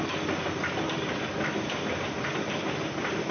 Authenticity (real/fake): real